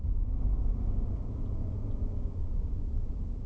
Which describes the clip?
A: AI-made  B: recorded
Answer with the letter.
A